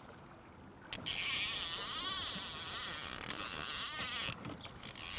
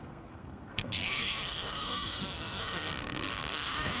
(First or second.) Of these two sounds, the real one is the first